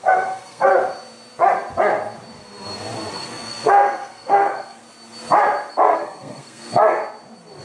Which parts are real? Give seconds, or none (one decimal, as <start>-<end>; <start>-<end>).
0.7-3.1; 4.8-5.7; 7.0-7.6